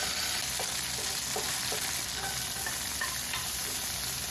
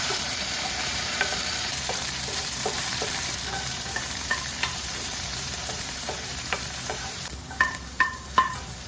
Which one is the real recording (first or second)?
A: first